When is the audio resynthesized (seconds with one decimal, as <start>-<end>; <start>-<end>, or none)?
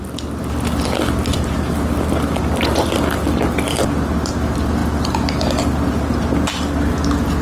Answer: none